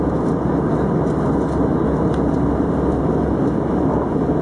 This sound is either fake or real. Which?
real